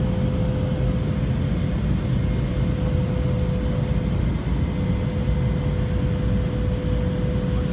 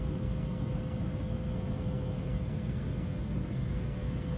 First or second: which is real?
first